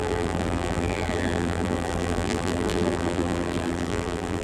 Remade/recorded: remade